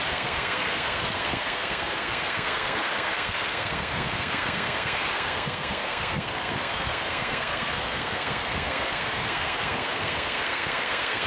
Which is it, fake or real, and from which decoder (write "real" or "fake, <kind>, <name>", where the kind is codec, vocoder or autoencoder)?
fake, codec, SNAC